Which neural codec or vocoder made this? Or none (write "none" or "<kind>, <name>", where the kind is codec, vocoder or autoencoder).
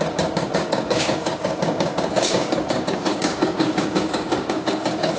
codec, DAC